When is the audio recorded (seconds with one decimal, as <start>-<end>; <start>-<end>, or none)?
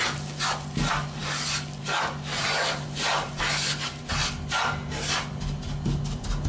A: 0.0-2.3; 3.4-6.5